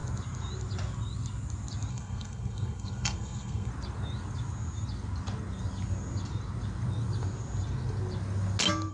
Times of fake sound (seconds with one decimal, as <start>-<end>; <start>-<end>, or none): 1.9-3.7